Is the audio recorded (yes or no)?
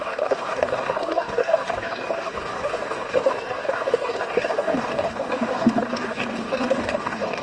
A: no